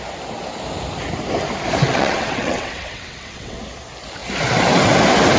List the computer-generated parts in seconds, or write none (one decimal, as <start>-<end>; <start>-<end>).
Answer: 1.8-3.6